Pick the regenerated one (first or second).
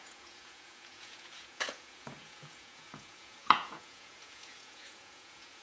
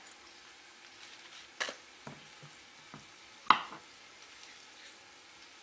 first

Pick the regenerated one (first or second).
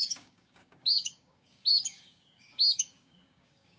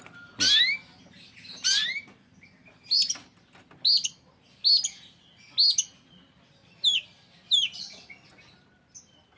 first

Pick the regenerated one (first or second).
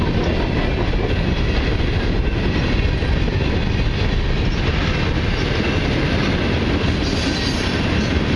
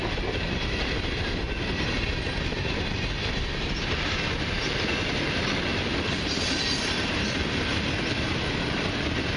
second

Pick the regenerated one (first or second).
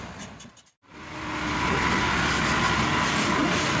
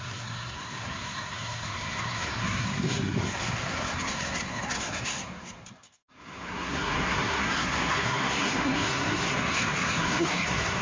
second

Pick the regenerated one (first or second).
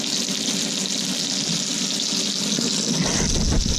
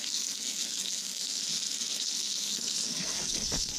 second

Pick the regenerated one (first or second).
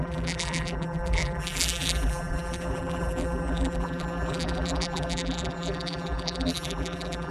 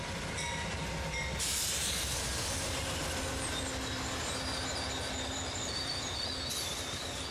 first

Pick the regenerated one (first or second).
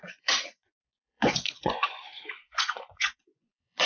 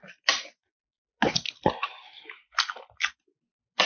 first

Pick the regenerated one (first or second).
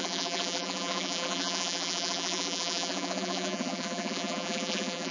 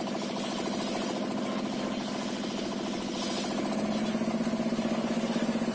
first